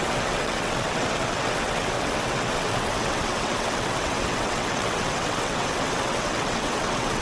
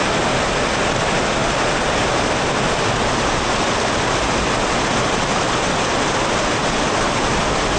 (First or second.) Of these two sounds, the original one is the second